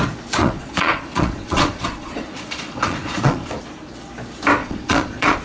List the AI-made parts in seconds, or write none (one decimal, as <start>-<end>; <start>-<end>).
0.4-3.6; 4.6-5.4

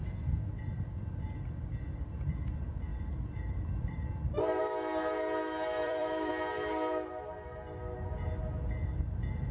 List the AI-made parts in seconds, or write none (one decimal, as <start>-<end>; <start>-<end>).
2.9-4.6; 5.8-6.3

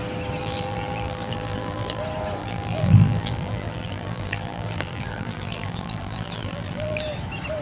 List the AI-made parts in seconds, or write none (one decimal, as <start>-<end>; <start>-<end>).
0.4-2.0; 2.4-7.0

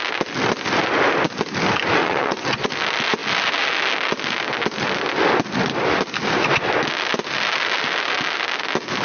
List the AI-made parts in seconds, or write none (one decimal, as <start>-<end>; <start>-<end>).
2.0-2.7

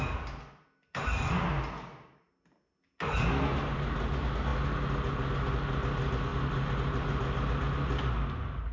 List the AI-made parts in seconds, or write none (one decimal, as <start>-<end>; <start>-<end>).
none